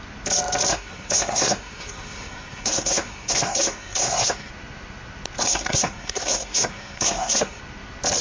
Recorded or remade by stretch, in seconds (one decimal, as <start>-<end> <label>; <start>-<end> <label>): 0.0-0.7 recorded; 0.7-4.5 remade; 4.5-5.4 recorded; 5.4-7.6 remade; 7.6-8.2 recorded